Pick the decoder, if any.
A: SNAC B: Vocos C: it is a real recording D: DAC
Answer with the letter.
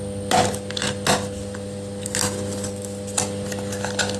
C